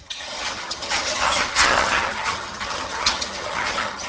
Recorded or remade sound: remade